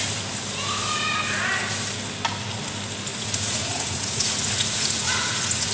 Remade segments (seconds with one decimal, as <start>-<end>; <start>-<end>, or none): 3.1-5.7